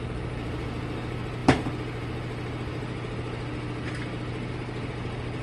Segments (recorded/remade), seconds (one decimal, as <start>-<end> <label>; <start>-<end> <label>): 0.0-1.4 recorded; 1.4-4.5 remade; 4.5-5.4 recorded

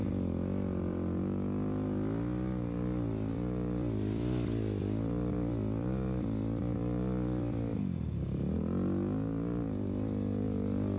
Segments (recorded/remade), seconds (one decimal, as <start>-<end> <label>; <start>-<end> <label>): 0.0-3.3 recorded; 3.3-7.7 remade; 7.7-11.0 recorded

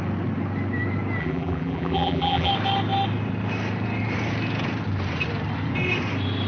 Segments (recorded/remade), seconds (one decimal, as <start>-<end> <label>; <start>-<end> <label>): 0.0-1.2 recorded; 1.2-2.5 remade; 2.5-6.5 recorded

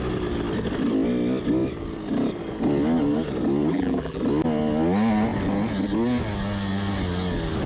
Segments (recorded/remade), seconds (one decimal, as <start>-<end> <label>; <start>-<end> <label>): 0.0-3.7 recorded; 3.7-4.2 remade; 4.2-7.7 recorded

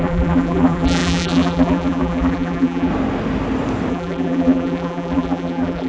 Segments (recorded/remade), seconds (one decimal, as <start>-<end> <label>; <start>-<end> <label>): 0.0-2.9 remade; 2.9-3.9 recorded; 3.9-5.9 remade

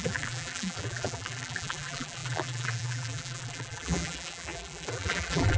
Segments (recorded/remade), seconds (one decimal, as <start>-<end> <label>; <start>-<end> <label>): 0.0-5.6 remade

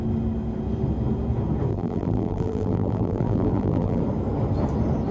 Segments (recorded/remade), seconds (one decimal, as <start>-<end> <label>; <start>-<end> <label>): 0.0-1.7 recorded; 1.7-4.0 remade; 4.0-5.1 recorded

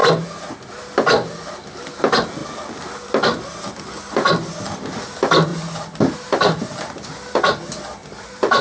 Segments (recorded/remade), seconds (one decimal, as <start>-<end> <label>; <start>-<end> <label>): 0.0-5.5 recorded; 5.5-6.6 remade; 6.6-8.0 recorded; 8.0-8.6 remade